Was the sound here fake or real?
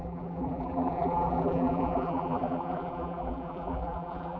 fake